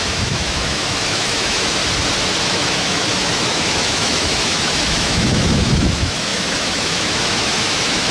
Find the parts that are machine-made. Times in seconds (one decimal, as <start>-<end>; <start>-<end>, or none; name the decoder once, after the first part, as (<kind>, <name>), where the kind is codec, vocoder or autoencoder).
0.0-1.8 (autoencoder, DAC-VAE); 2.4-8.1